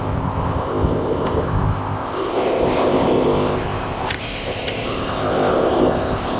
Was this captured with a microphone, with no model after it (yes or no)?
no